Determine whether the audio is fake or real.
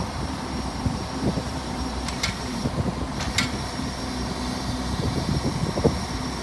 fake